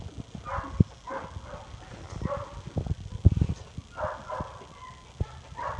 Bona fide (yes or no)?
yes